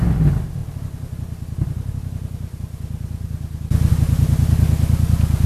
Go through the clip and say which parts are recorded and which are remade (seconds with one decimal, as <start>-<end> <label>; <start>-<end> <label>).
0.0-5.5 recorded